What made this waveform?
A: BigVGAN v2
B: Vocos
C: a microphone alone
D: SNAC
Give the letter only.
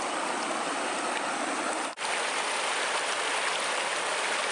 A